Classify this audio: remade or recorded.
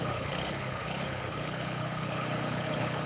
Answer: remade